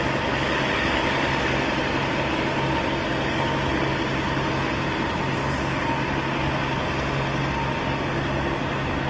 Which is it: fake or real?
real